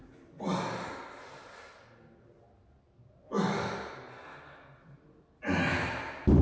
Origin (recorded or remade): recorded